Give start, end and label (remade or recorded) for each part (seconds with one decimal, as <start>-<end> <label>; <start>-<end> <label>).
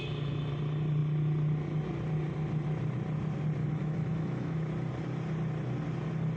0.0-3.6 recorded; 3.6-4.7 remade; 4.7-6.4 recorded